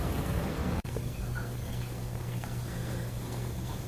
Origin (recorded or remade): remade